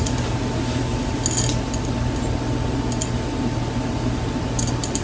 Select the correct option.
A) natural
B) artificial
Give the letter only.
A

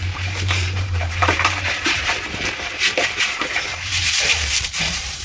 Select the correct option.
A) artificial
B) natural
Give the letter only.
A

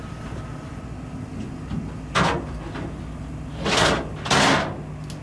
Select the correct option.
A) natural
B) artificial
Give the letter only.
A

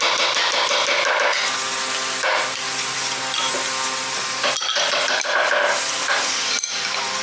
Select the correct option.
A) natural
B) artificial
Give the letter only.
A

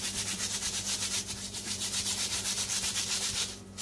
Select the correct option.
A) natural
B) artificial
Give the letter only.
B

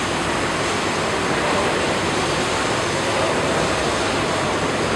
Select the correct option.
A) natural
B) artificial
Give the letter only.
B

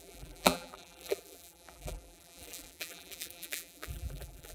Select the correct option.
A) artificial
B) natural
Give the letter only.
A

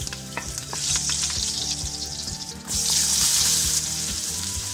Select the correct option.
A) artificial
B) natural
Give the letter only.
A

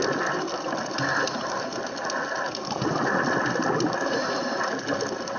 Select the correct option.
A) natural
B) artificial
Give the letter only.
A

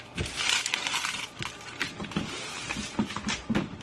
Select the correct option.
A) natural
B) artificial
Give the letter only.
B